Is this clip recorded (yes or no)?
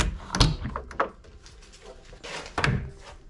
yes